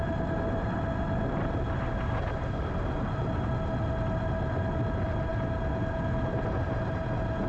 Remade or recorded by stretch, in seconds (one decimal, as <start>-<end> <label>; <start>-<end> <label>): 0.0-7.5 recorded